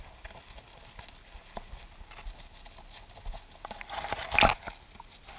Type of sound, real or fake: real